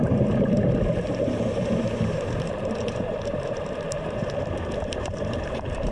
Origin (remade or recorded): remade